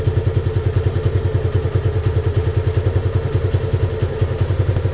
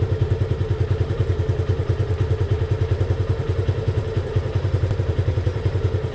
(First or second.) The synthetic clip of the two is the second